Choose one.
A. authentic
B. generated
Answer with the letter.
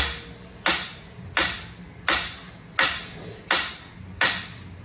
A